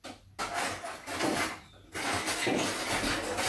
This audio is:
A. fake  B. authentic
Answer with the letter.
B